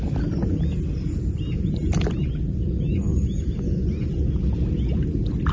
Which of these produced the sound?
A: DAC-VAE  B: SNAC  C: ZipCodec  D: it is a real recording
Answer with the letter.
D